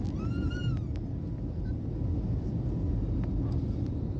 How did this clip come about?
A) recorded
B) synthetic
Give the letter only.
A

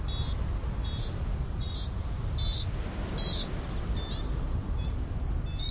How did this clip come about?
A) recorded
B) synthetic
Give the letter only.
A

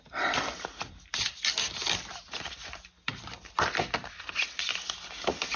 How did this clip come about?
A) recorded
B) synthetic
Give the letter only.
A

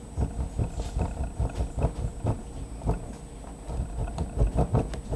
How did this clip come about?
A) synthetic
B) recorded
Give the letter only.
B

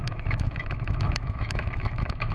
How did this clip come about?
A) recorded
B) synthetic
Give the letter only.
B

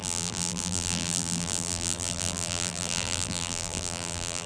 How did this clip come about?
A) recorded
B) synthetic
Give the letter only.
B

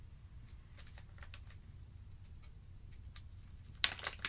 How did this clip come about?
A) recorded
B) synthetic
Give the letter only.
A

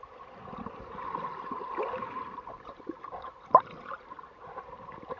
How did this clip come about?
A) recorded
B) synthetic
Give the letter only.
B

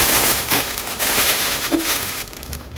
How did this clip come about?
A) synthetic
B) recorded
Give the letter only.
A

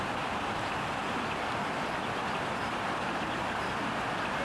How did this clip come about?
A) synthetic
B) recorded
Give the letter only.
B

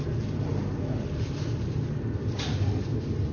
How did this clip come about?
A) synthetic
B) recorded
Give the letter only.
B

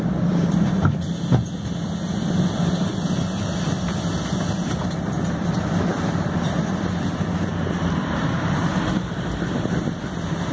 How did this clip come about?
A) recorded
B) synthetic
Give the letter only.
A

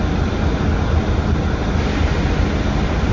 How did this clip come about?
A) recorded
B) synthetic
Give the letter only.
A